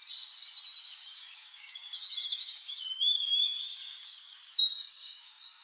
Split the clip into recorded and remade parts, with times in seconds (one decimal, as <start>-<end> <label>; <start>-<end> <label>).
0.0-0.8 recorded; 0.8-5.6 remade